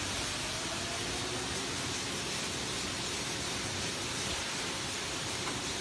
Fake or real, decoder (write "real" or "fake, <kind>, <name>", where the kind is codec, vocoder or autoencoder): real